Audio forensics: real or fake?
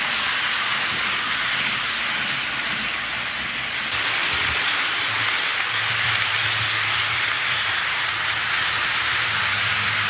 real